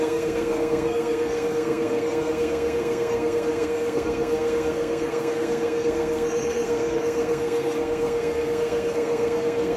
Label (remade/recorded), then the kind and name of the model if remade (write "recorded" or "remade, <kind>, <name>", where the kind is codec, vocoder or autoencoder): remade, codec, SNAC